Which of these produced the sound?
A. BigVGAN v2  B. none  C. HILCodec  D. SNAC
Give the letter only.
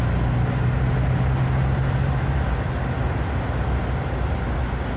B